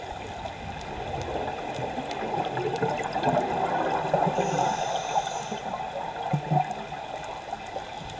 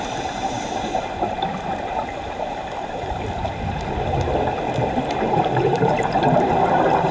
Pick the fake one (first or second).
second